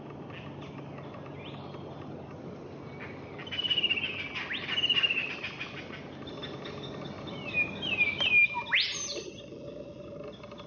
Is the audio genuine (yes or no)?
yes